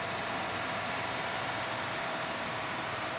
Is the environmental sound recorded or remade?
remade